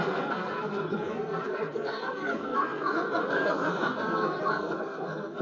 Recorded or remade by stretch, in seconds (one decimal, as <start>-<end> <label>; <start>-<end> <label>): 0.0-5.4 remade